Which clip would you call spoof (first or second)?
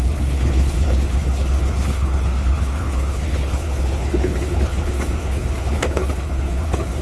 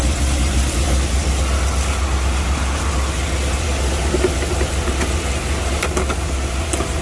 first